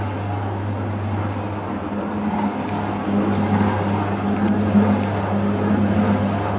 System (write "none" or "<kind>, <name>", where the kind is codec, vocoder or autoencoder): none